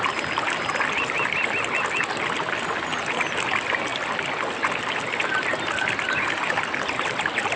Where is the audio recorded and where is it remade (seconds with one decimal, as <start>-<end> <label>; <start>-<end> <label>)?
0.0-7.6 recorded